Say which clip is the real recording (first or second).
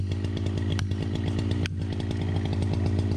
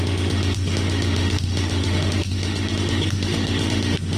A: first